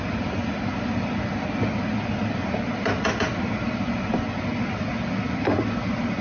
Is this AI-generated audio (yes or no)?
no